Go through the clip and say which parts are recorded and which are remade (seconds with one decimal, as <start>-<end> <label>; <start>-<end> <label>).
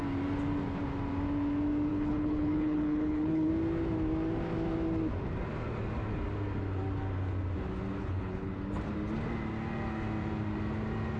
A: 0.0-1.9 recorded; 1.9-3.5 remade; 3.5-8.0 recorded; 8.0-8.5 remade; 8.5-11.2 recorded